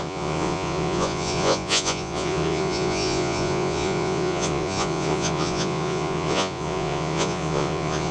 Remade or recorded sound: remade